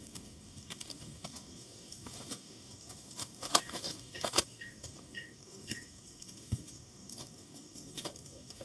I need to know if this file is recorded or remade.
remade